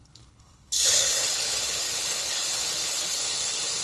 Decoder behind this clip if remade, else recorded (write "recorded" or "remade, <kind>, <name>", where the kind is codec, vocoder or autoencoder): remade, codec, HILCodec